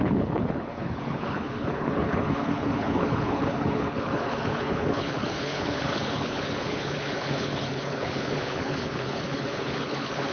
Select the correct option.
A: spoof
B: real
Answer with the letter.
A